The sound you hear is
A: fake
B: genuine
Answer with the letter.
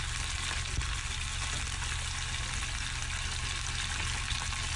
B